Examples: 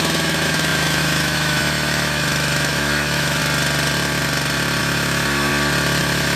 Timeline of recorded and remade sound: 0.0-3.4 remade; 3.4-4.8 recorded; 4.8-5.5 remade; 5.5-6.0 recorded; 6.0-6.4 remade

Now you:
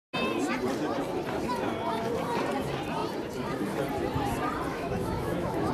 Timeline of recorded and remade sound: 0.0-4.7 recorded; 4.7-5.7 remade

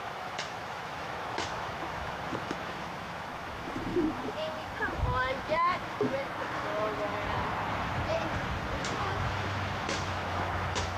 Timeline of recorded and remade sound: 0.0-6.7 remade; 6.7-8.8 recorded; 8.8-11.0 remade

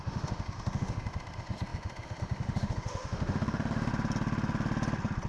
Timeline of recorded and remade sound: 0.0-3.9 remade; 3.9-5.3 recorded

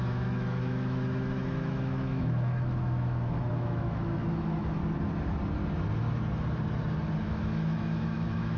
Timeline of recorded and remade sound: 0.0-4.8 remade; 4.8-7.2 recorded; 7.2-8.6 remade

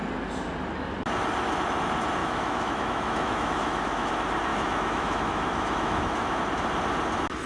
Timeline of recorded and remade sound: 0.0-2.2 recorded; 2.2-4.1 remade; 4.1-4.5 recorded; 4.5-6.4 remade; 6.4-7.5 recorded

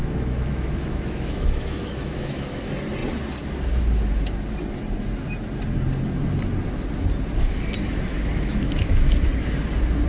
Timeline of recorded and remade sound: 0.0-2.6 remade; 2.6-8.1 recorded; 8.1-9.1 remade; 9.1-10.1 recorded